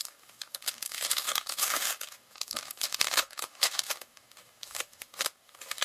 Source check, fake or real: fake